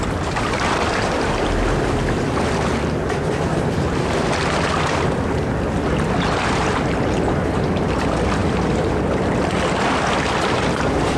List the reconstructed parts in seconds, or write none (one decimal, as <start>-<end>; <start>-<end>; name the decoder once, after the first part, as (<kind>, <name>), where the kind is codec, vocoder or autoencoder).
none